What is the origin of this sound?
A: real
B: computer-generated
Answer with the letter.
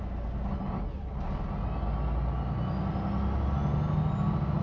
A